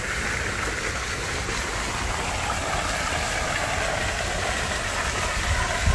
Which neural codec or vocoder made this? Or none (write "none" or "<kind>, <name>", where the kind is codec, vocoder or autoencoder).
none